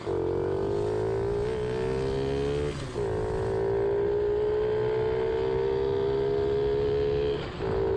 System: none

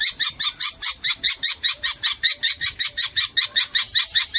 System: vocoder, BigVGAN v2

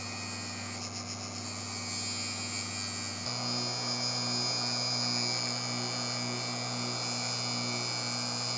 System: none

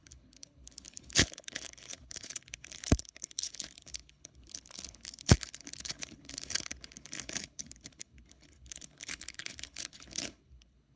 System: codec, HILCodec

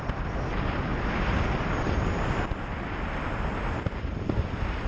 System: none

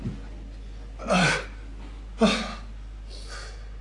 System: none